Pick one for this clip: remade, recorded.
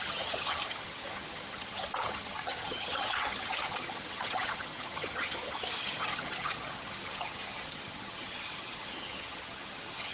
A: remade